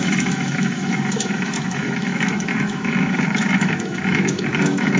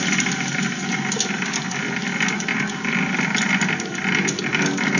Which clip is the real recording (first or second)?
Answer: second